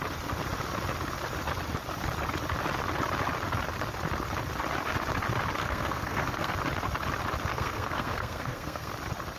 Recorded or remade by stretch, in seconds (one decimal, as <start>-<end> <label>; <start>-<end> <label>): 0.0-5.6 recorded; 5.6-6.5 remade; 6.5-7.5 recorded; 7.5-8.9 remade; 8.9-9.4 recorded